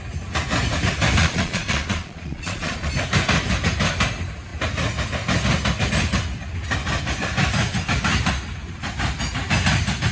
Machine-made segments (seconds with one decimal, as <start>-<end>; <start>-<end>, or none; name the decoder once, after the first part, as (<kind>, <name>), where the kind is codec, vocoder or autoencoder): 1.2-2.9 (vocoder, Vocos)